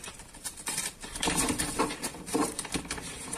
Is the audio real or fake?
fake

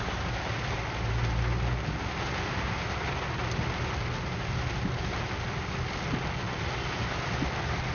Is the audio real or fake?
real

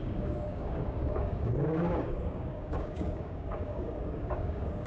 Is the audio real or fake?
fake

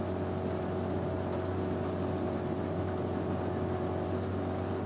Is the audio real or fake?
real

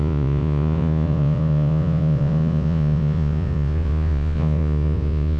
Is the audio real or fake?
fake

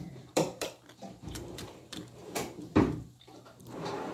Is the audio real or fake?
fake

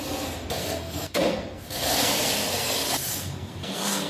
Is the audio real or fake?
fake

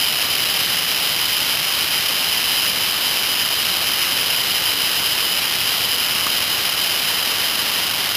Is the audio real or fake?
real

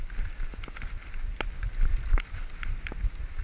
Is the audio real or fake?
real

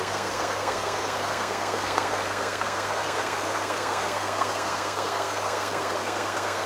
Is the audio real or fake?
fake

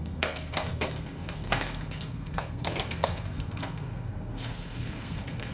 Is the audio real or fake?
fake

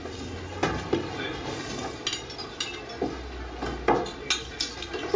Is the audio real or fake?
real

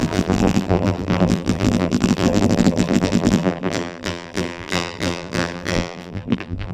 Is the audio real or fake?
fake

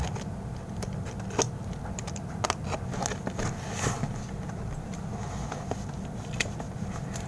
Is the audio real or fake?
real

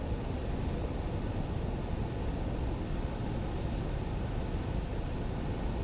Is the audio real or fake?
real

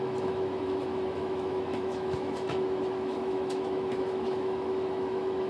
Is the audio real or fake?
fake